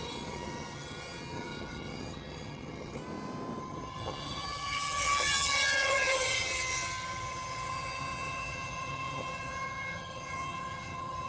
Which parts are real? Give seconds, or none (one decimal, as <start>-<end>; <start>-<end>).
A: 3.0-3.6